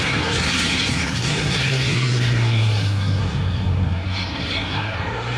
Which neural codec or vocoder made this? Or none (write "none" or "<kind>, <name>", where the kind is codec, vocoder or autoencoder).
codec, SNAC